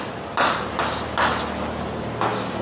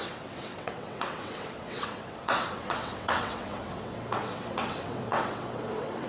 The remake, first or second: second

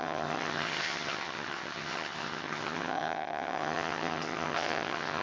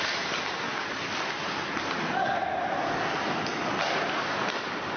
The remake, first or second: first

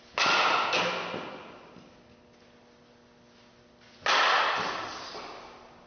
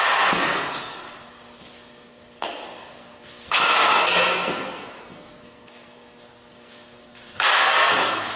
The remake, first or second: second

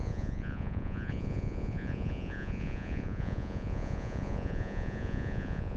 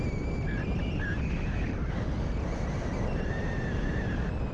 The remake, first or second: first